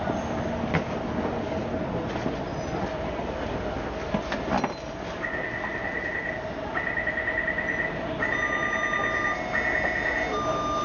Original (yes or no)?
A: yes